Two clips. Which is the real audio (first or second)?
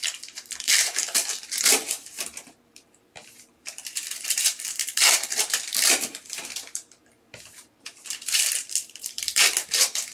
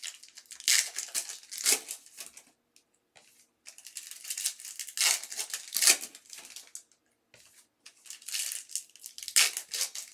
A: second